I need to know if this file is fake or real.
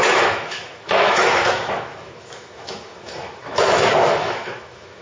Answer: fake